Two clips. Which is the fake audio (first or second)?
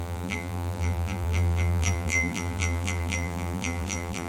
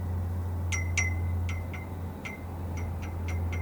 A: first